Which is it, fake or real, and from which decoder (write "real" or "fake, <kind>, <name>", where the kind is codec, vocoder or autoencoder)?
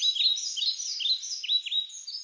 real